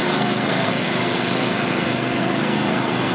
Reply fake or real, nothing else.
fake